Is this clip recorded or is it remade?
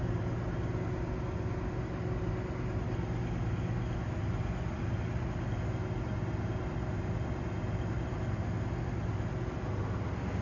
recorded